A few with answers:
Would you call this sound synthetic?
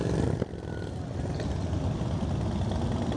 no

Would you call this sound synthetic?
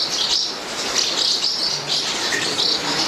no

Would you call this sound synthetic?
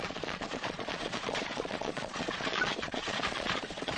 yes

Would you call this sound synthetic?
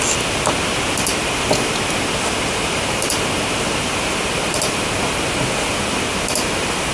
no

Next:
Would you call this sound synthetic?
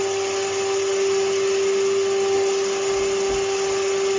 no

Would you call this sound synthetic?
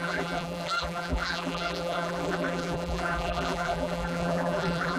yes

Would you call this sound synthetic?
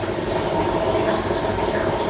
no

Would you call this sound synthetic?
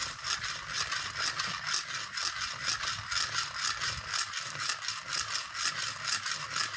no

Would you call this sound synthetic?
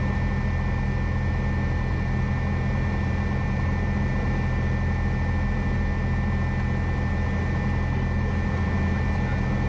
no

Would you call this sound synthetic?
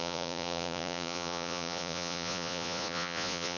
yes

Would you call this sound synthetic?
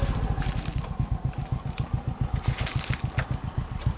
no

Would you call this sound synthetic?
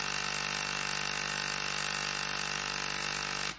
no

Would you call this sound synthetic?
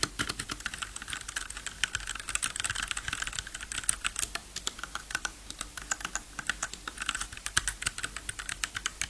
no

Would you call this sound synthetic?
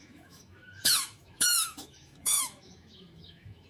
yes